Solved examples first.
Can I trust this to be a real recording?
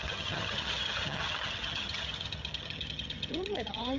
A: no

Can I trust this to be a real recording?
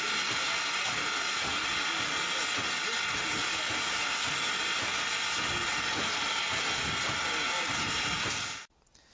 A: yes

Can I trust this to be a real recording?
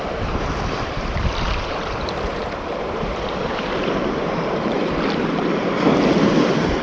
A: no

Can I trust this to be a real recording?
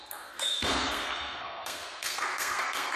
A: no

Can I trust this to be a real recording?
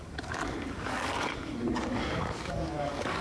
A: no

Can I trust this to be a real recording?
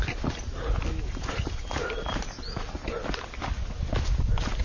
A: yes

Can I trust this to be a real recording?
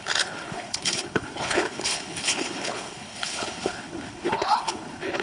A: no